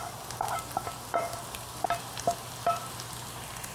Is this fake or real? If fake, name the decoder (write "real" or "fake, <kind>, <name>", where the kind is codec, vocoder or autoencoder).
real